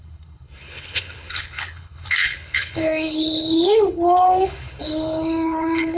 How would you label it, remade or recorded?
remade